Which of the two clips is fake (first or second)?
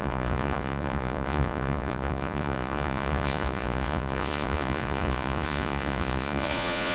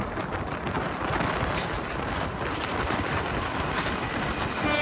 first